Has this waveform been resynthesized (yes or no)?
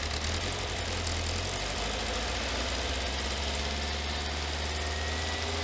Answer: no